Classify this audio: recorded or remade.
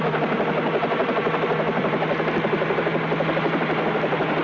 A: recorded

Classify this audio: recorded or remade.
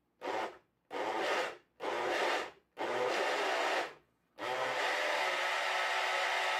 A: recorded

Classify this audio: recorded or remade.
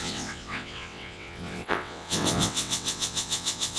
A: remade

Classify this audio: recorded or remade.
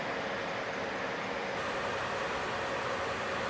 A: recorded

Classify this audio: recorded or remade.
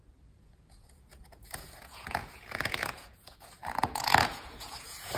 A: remade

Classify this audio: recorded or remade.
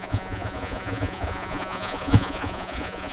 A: remade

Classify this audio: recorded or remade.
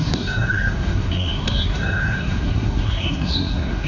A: remade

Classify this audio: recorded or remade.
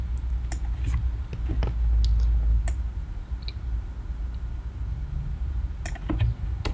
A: recorded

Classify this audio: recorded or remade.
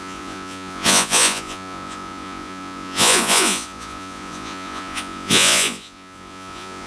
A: remade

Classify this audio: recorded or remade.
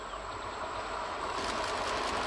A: recorded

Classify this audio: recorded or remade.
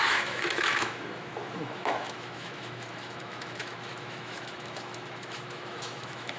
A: remade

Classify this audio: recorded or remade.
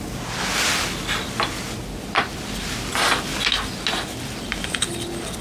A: recorded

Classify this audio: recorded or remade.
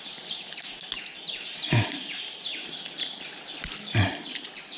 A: recorded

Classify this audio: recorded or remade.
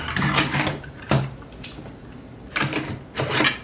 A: recorded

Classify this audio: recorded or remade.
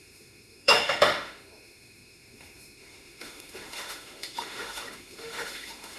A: remade